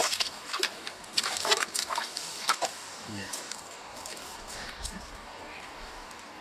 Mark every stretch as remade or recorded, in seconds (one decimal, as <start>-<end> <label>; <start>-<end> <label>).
0.0-6.4 remade